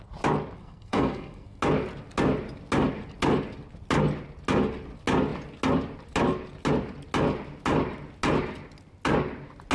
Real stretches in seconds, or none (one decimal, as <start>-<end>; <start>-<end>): 0.0-0.6; 1.6-9.7